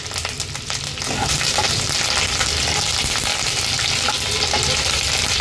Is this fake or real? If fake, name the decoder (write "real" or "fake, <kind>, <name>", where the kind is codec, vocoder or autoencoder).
real